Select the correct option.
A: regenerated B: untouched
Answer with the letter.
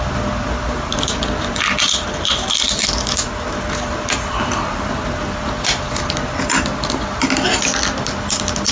B